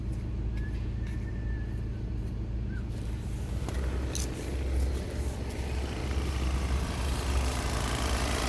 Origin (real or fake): real